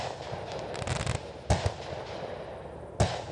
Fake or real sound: real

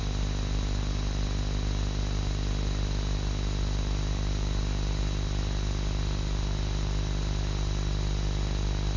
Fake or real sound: real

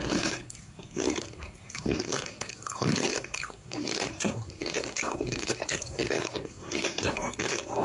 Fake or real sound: fake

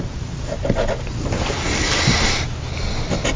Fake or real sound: real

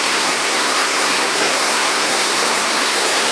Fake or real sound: fake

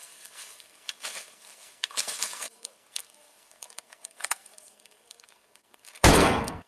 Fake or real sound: fake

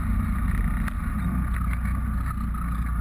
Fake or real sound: real